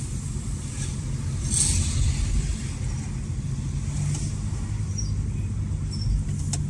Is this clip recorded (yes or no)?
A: yes